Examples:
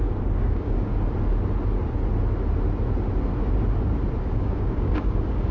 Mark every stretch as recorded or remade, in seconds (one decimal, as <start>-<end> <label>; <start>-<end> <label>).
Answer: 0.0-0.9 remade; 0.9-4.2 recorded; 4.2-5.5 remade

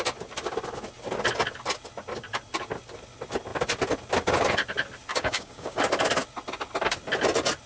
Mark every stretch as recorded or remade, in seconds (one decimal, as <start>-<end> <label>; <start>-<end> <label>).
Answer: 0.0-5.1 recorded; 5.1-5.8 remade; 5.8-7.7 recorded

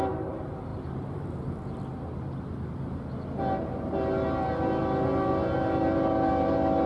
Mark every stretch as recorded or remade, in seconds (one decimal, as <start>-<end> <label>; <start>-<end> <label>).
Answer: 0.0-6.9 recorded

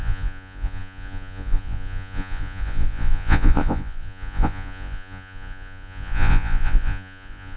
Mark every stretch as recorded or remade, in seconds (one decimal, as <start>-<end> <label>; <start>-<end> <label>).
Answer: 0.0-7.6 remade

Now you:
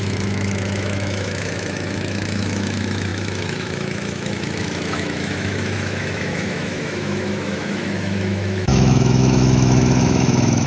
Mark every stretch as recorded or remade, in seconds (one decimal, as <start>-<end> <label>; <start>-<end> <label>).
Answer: 0.0-10.7 remade

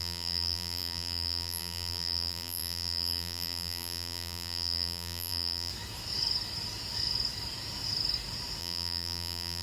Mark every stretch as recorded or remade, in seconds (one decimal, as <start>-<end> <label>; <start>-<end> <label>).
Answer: 0.0-5.7 remade; 5.7-8.6 recorded; 8.6-9.6 remade